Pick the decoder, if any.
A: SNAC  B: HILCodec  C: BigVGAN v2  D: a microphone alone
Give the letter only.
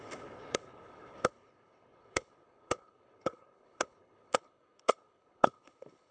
B